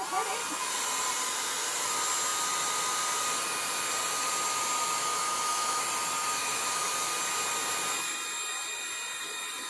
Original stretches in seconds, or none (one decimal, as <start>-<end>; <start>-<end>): 0.0-5.0; 5.8-6.4; 6.9-9.7